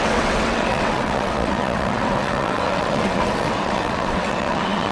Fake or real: fake